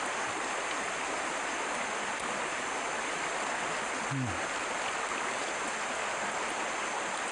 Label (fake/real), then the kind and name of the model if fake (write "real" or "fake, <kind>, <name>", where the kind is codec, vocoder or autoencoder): real